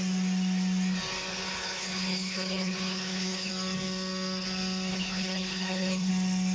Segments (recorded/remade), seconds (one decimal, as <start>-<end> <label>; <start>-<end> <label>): 0.0-1.3 recorded; 1.3-3.5 remade; 3.5-4.9 recorded; 4.9-6.1 remade; 6.1-6.5 recorded